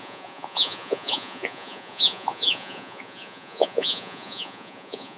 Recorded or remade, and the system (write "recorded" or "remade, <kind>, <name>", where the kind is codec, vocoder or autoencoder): remade, vocoder, Vocos